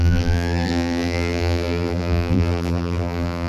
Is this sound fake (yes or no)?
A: yes